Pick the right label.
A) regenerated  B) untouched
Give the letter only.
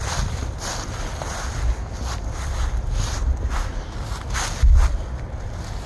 B